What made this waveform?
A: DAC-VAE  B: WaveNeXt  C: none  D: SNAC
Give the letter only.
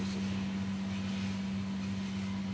C